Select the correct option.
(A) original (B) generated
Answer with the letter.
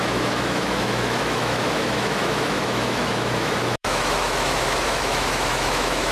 B